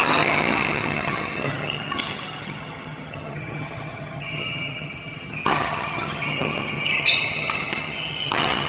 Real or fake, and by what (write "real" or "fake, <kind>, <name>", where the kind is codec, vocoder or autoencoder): fake, vocoder, HiFi-GAN